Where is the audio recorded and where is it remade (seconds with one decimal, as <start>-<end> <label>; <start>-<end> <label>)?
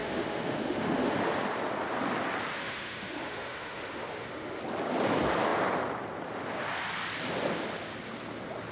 0.0-1.1 remade; 1.1-2.5 recorded; 2.5-4.6 remade; 4.6-8.7 recorded